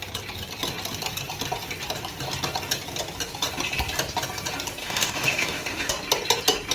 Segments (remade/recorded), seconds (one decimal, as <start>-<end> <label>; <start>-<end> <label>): 0.0-4.8 recorded; 4.8-5.9 remade; 5.9-6.7 recorded